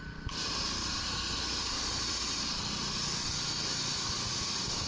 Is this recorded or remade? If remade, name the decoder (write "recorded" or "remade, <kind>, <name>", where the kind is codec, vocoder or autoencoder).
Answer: recorded